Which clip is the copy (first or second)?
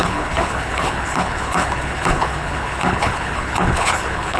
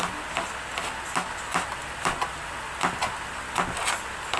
first